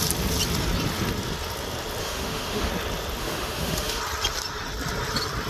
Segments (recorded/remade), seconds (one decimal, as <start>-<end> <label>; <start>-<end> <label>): 0.0-2.0 recorded; 2.0-2.7 remade; 2.7-3.2 recorded; 3.2-4.0 remade; 4.0-5.5 recorded

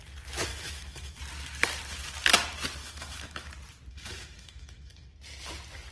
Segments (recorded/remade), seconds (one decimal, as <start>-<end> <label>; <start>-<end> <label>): 0.0-0.5 recorded; 0.5-1.2 remade; 1.2-2.8 recorded; 2.8-3.5 remade; 3.5-3.9 recorded; 3.9-5.2 remade; 5.2-5.9 recorded

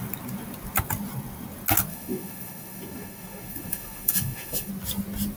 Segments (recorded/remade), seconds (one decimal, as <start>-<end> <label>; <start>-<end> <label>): 0.0-1.9 recorded; 1.9-4.7 remade; 4.7-5.4 recorded

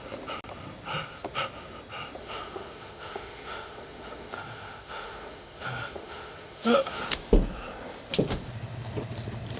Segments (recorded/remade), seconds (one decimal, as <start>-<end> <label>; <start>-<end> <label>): 0.0-2.2 recorded; 2.2-7.0 remade; 7.0-9.6 recorded

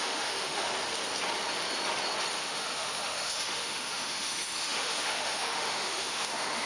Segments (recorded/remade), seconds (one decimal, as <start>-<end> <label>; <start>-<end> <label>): 0.0-0.7 remade; 0.7-2.4 recorded; 2.4-6.7 remade

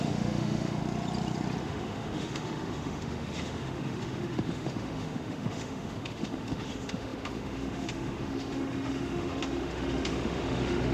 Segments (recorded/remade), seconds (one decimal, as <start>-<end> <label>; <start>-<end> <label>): 0.0-0.8 remade; 0.8-1.6 recorded; 1.6-10.9 remade

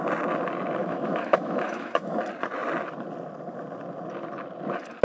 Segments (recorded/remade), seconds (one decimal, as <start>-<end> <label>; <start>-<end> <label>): 0.0-0.8 recorded; 0.8-2.2 remade; 2.2-5.0 recorded

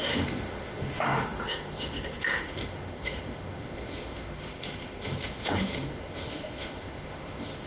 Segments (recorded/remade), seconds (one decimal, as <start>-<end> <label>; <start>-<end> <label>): 0.0-7.7 remade